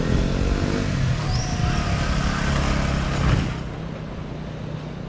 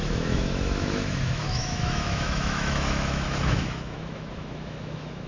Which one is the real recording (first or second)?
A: first